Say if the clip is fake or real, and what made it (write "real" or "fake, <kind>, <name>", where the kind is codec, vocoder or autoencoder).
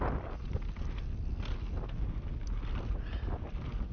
real